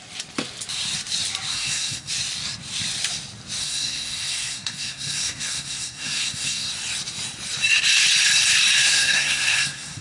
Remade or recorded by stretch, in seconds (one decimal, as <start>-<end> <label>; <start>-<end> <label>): 0.0-1.5 recorded; 1.5-2.1 remade; 2.1-3.6 recorded; 3.6-6.7 remade; 6.7-8.8 recorded; 8.8-10.0 remade

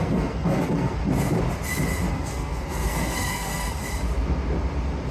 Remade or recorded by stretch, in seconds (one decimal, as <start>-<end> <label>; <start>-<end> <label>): 0.0-1.0 remade; 1.0-2.1 recorded; 2.1-3.8 remade; 3.8-5.1 recorded

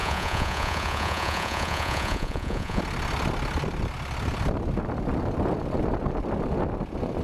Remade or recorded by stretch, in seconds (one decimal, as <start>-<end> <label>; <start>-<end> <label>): 0.0-2.8 remade; 2.8-7.2 recorded

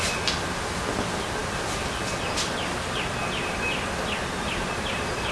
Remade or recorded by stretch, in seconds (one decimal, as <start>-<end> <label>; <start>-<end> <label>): 0.0-5.3 recorded